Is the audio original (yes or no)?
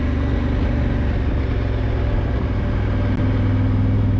yes